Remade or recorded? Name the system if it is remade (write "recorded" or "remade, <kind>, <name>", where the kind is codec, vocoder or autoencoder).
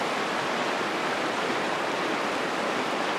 recorded